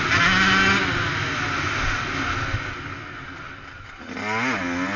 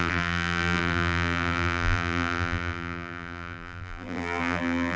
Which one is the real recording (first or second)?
first